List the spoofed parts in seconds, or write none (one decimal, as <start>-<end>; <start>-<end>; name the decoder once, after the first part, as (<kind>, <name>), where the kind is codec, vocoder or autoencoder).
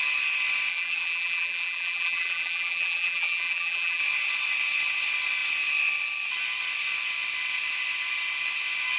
0.7-4.0 (vocoder, BigVGAN v2)